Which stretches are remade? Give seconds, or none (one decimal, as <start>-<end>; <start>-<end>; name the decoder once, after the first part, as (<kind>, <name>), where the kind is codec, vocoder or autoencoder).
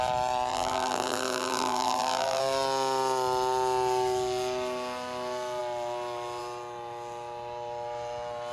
0.5-2.4 (vocoder, BigVGAN v2)